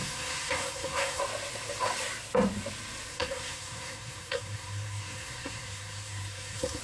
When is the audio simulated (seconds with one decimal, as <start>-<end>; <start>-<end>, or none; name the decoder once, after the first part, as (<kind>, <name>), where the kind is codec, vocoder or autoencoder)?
0.0-1.2 (codec, SNAC); 3.1-6.8